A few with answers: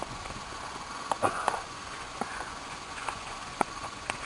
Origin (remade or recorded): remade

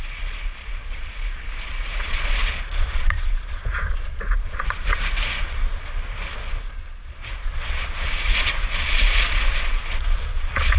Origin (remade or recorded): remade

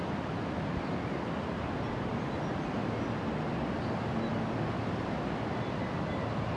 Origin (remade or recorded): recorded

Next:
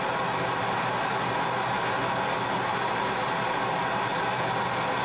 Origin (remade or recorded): recorded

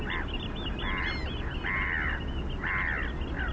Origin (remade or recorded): recorded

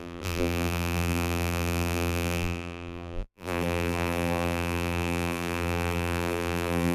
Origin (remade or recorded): remade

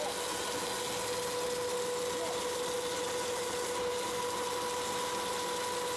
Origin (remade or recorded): recorded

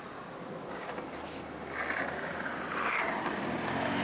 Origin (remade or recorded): recorded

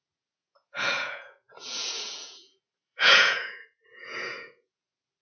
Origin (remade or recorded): remade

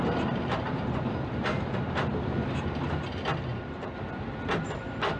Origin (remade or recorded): remade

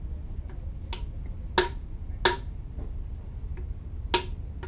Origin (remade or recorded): recorded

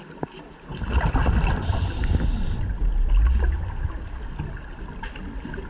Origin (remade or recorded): recorded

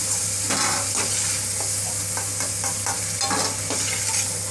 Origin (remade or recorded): recorded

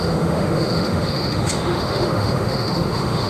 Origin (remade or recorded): remade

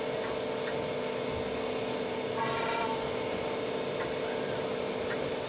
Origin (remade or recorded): recorded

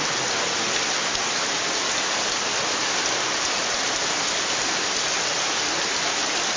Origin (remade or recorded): recorded